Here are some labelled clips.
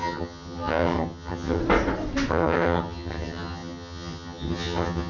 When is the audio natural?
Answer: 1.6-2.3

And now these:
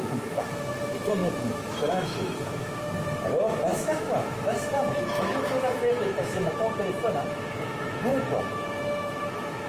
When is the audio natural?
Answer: none

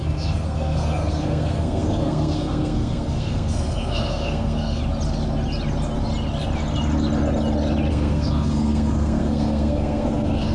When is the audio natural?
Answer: 4.8-7.9

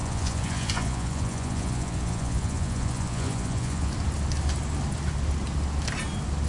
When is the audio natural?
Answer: 3.9-6.5

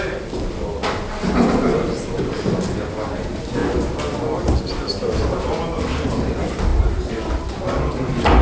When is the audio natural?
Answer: 0.0-8.4

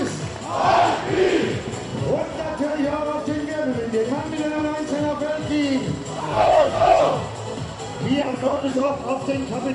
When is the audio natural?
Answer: 0.0-6.2; 7.0-8.2; 8.9-9.7